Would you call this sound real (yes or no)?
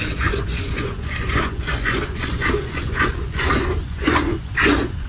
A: no